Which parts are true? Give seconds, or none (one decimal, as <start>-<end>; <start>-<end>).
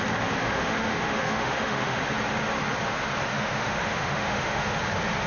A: 0.0-0.4; 2.0-3.3; 4.8-5.3